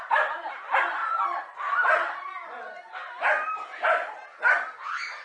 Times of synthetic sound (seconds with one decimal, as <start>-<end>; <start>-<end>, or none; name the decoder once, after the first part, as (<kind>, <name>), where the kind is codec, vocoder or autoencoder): none